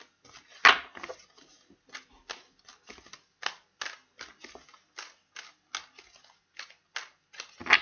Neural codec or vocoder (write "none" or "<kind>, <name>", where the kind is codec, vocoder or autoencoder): none